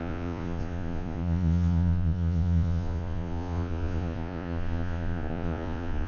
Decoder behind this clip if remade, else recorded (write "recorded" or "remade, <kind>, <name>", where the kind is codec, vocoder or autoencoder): remade, vocoder, Vocos